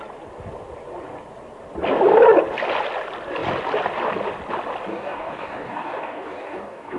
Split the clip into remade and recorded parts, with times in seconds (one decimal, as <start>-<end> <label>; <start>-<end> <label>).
0.0-4.9 recorded; 4.9-7.0 remade